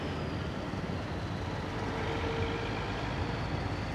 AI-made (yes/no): no